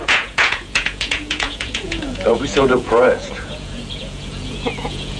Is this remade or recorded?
remade